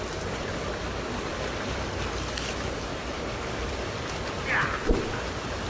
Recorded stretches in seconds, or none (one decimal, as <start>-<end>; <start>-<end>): 0.0-1.3; 2.0-2.9; 4.8-5.7